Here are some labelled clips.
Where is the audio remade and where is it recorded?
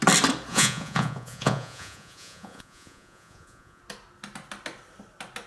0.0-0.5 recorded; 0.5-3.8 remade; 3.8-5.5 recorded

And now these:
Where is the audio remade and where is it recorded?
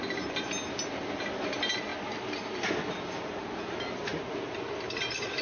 0.0-5.4 recorded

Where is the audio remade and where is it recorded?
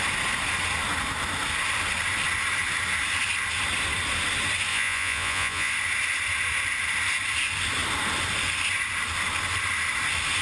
0.0-4.7 recorded; 4.7-5.7 remade; 5.7-10.4 recorded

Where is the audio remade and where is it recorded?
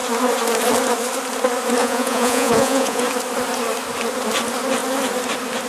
0.0-1.8 recorded; 1.8-3.0 remade; 3.0-5.7 recorded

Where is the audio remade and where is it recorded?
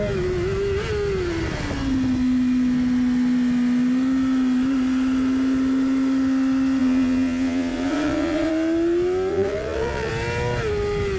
0.0-6.8 recorded; 6.8-8.5 remade; 8.5-9.3 recorded; 9.3-10.1 remade; 10.1-11.2 recorded